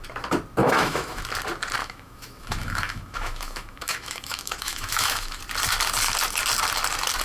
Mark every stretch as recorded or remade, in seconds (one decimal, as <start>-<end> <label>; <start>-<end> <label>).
0.0-0.6 recorded; 0.6-1.2 remade; 1.2-1.8 recorded; 1.8-5.4 remade; 5.4-7.2 recorded